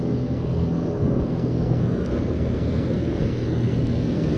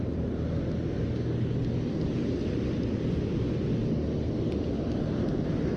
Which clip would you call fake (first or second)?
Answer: first